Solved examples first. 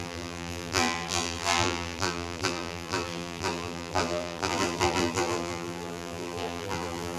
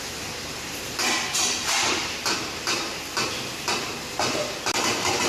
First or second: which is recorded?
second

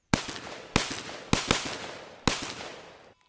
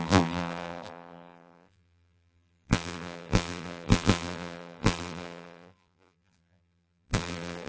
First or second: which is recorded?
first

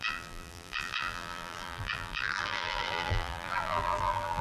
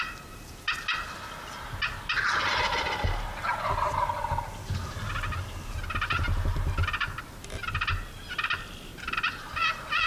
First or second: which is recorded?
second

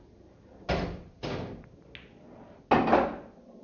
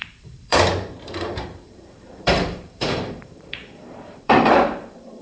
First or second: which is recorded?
first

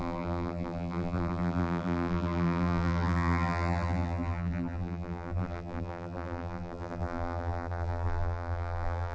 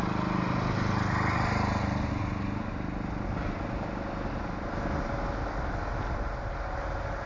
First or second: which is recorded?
second